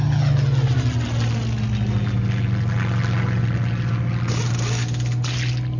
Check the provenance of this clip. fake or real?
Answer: real